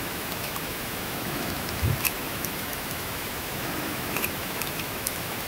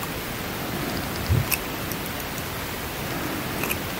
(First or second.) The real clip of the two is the second